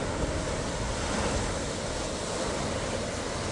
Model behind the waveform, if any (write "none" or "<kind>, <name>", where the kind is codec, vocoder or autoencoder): none